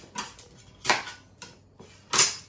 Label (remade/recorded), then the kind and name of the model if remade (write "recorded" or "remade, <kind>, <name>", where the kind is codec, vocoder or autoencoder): recorded